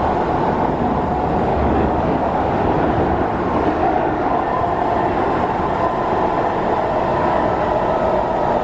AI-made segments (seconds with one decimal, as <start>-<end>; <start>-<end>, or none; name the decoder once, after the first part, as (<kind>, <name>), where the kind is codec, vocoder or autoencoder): 1.5-2.5 (codec, DAC); 3.8-4.4; 7.1-7.6